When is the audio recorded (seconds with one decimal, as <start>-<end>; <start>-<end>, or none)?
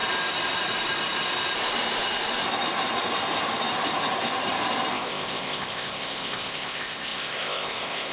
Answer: 0.0-4.9